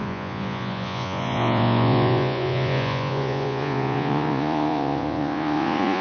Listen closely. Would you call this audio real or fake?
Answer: fake